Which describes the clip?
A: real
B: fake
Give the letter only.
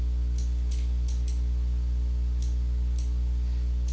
A